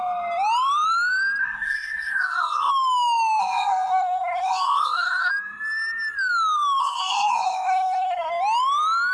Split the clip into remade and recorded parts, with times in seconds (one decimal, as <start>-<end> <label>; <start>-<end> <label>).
0.0-1.4 recorded; 1.4-2.7 remade; 2.7-3.4 recorded; 3.4-5.3 remade; 5.3-6.8 recorded; 6.8-8.3 remade; 8.3-9.1 recorded